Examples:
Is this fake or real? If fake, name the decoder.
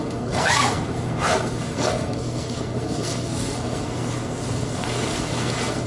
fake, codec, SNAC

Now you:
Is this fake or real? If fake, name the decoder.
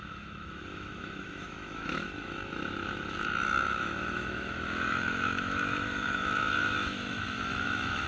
fake, autoencoder, DAC-VAE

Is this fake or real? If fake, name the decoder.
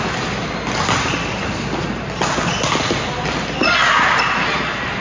real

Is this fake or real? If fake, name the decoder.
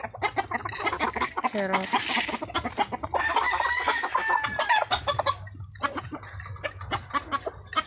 real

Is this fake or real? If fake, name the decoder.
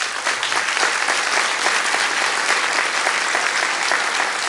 real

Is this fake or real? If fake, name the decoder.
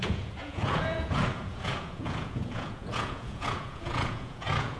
fake, vocoder, Vocos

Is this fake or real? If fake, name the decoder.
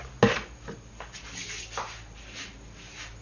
real